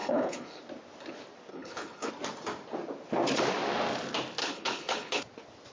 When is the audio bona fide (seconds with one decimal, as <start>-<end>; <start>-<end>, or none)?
0.6-1.5; 2.1-4.4; 5.2-5.7